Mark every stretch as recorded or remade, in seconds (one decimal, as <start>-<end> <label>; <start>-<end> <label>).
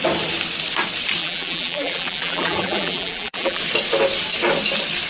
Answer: 0.0-1.2 recorded; 1.2-3.6 remade; 3.6-5.1 recorded